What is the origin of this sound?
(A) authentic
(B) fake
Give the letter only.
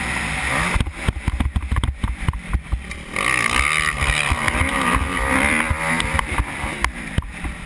A